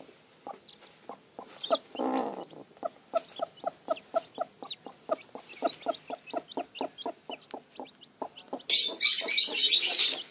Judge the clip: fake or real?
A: real